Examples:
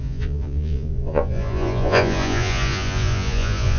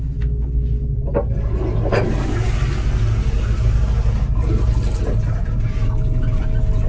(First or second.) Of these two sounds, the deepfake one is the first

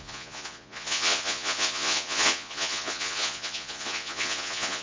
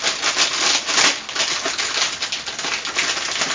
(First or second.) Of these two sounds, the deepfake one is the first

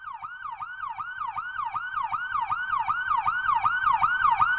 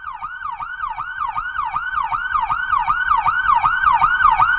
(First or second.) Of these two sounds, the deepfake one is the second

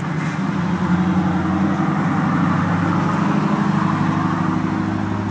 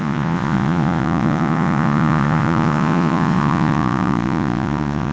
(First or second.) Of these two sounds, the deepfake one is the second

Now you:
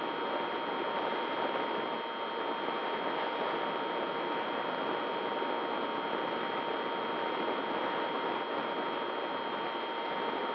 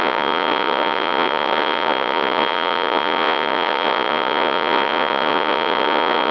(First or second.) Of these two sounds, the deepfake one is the second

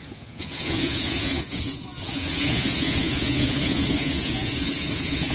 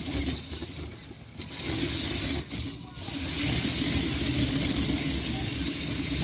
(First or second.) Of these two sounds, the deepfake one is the first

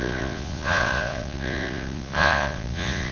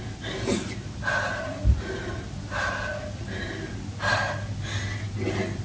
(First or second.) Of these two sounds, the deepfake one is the first